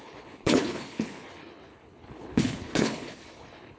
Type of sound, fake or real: fake